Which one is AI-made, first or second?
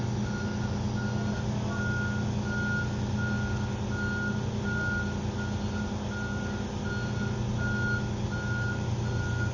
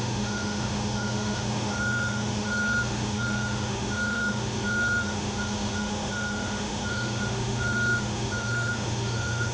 second